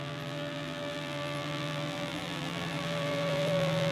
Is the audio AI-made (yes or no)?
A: yes